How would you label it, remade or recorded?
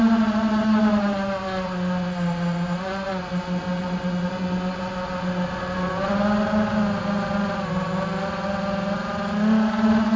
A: recorded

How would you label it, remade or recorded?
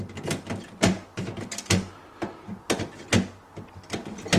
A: recorded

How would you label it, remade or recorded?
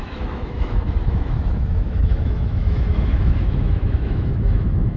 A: remade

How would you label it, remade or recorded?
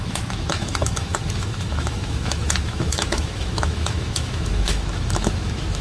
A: remade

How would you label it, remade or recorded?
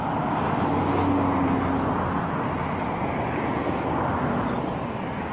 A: recorded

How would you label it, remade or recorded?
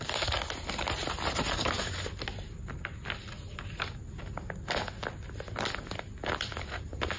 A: recorded